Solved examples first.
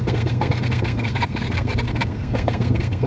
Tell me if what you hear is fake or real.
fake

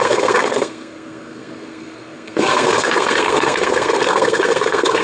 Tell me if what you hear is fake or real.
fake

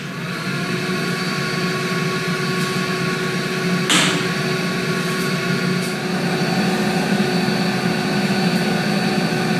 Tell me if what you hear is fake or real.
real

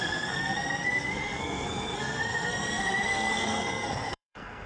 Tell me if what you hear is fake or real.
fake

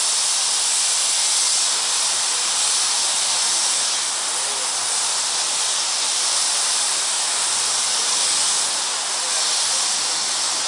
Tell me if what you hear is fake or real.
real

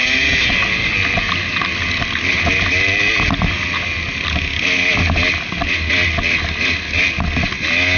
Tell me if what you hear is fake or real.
real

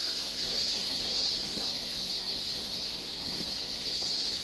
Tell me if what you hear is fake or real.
fake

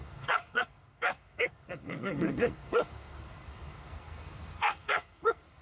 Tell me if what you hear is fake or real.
fake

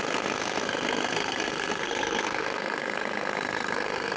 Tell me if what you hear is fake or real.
fake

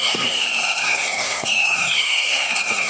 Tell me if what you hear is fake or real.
fake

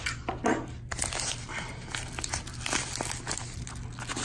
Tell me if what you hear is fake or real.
real